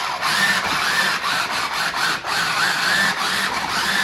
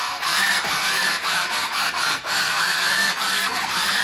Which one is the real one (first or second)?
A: first